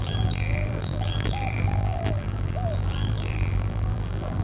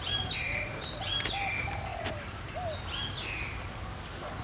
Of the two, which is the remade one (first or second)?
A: first